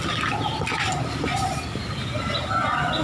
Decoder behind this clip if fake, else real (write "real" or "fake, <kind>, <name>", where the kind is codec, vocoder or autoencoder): real